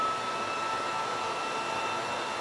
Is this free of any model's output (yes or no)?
yes